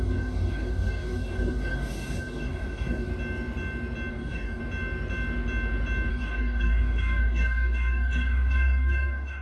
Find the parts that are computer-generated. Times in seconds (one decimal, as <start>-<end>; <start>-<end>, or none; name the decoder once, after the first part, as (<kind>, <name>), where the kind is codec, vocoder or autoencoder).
0.0-3.1 (codec, DAC); 4.1-4.6; 6.1-9.4

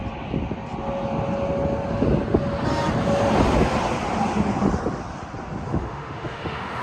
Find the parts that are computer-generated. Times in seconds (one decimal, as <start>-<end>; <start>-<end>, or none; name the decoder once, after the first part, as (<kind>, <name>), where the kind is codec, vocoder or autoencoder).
5.7-6.8 (autoencoder, DAC-VAE)

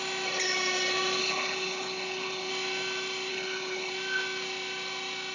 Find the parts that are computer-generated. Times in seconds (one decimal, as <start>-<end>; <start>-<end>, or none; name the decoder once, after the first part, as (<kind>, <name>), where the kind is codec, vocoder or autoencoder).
1.2-2.5 (codec, HILCodec); 3.3-3.9

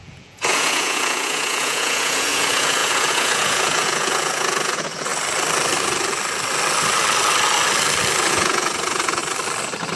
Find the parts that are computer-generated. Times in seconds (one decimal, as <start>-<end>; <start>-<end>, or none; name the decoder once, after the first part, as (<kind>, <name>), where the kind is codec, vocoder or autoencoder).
0.0-5.1 (vocoder, Vocos); 8.3-9.2

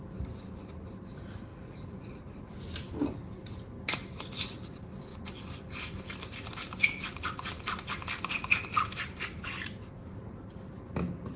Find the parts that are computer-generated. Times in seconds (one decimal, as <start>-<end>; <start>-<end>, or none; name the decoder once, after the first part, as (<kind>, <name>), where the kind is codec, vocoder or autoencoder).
1.5-2.6 (vocoder, Vocos)

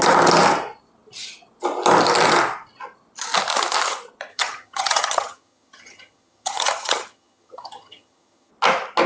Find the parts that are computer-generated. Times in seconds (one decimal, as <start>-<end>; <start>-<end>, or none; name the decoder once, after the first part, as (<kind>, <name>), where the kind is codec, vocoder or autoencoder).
4.3-8.5 (vocoder, HiFi-GAN)